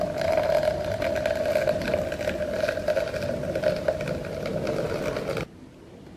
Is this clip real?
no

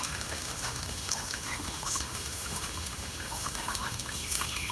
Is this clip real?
no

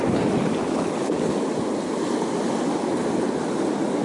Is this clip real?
yes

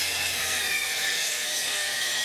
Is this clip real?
no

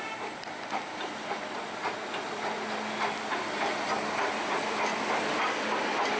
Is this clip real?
yes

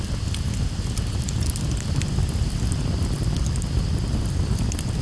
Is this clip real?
yes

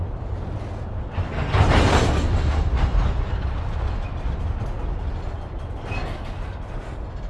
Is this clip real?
yes